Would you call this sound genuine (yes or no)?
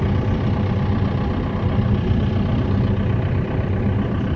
yes